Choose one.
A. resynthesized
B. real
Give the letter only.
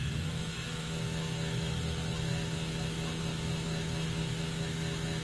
A